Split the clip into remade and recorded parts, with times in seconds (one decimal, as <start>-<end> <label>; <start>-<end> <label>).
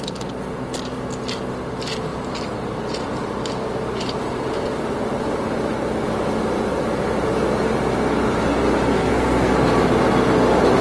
0.0-8.9 recorded; 8.9-9.5 remade; 9.5-10.8 recorded